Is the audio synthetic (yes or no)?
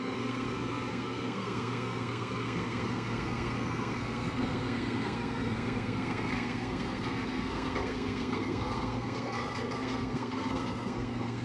yes